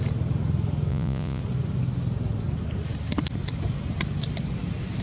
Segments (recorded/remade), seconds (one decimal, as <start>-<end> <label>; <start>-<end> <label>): 0.0-0.9 recorded; 0.9-1.4 remade; 1.4-5.0 recorded